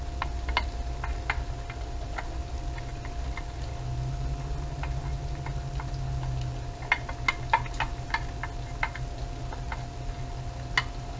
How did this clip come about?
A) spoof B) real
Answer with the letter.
B